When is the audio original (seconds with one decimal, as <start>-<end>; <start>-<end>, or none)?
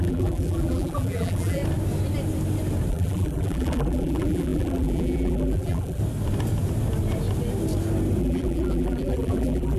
1.6-2.9; 6.0-8.2